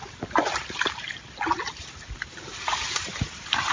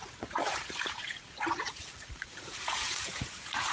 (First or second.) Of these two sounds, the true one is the first